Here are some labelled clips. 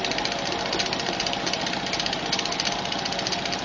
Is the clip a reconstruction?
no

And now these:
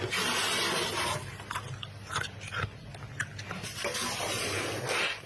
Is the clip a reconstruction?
no